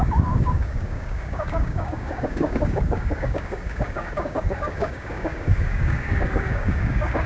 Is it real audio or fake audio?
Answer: fake